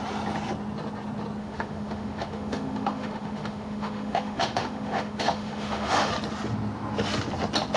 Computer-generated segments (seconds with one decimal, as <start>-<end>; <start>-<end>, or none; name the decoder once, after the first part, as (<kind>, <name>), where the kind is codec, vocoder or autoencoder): 1.4-6.1 (autoencoder, DAC-VAE)